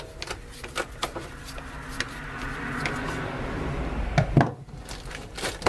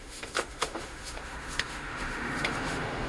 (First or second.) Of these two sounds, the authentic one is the first